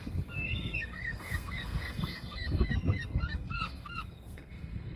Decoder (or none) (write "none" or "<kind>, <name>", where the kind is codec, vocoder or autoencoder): codec, SNAC